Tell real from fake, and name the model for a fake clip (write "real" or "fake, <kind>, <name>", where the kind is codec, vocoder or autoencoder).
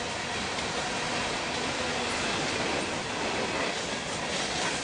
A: real